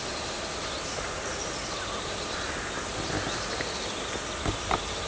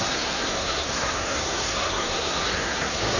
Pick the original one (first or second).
first